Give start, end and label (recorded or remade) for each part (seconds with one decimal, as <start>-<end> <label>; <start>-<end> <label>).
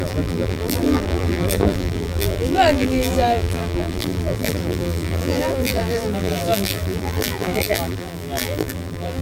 0.0-9.2 remade